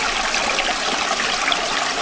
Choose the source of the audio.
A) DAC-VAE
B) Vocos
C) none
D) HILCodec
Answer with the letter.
C